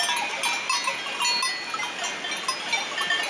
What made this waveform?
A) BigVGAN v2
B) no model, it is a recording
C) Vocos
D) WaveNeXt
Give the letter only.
B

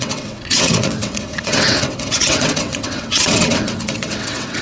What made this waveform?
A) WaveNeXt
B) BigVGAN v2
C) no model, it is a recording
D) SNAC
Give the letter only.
A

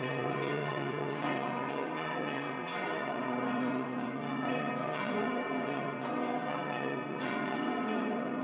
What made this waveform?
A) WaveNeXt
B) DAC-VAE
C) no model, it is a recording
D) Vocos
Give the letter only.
A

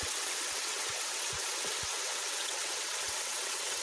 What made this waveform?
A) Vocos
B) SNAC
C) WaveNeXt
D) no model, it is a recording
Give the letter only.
C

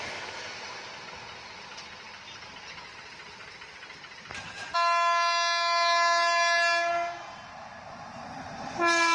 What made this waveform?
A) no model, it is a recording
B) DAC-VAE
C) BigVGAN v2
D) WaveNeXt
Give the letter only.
A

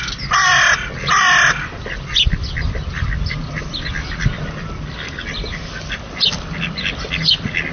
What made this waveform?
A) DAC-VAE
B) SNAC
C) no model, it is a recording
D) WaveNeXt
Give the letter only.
C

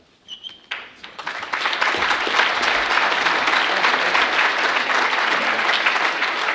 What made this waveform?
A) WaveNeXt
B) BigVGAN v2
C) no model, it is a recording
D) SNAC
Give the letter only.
C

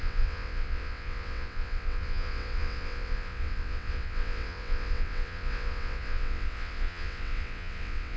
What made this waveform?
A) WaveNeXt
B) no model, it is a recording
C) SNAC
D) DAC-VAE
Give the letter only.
A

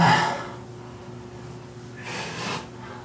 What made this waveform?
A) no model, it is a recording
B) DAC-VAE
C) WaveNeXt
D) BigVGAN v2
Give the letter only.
A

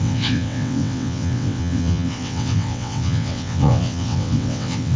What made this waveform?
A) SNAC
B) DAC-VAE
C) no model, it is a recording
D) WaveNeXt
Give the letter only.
D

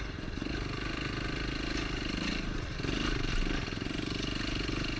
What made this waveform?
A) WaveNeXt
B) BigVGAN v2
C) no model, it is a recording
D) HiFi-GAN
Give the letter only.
C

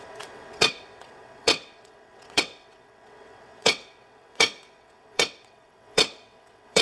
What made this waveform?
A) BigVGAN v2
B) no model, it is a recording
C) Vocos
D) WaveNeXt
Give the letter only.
D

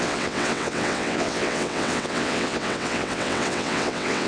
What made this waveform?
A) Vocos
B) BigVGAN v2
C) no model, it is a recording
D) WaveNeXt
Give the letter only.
D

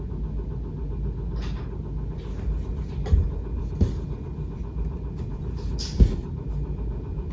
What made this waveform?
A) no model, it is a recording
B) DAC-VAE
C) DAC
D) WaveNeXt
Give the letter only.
A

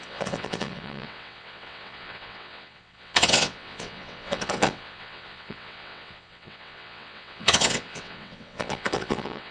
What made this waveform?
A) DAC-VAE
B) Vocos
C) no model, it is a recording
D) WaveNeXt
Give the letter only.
D